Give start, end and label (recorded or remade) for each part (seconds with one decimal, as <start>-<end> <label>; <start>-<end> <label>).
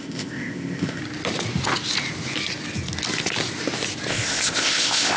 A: 0.0-1.0 remade; 1.0-4.1 recorded; 4.1-5.2 remade